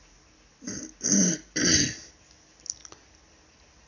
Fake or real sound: real